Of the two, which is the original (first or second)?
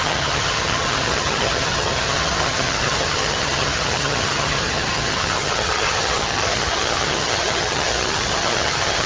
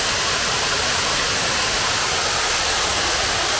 second